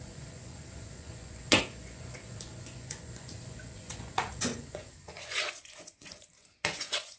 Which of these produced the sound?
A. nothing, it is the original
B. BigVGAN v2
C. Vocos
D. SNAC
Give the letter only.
C